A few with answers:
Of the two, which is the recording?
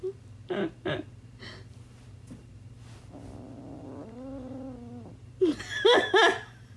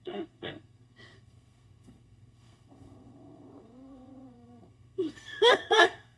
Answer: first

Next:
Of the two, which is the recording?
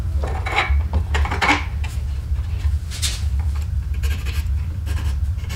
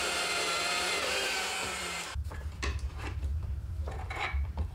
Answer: first